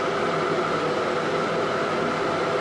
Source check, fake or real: real